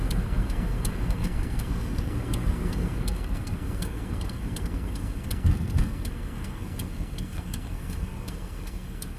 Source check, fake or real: fake